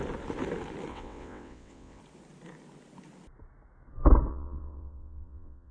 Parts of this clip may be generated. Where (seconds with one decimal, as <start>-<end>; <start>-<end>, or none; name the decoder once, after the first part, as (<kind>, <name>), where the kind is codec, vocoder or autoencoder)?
0.9-2.0 (vocoder, WaveNeXt); 4.3-5.7